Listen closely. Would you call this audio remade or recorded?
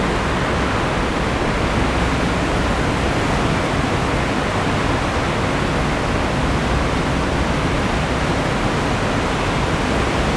recorded